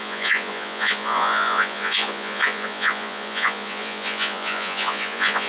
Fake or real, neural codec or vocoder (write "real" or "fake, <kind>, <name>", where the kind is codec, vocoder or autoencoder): fake, vocoder, Vocos